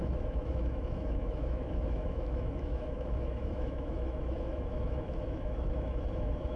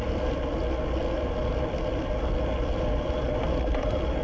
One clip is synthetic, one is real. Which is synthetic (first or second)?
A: first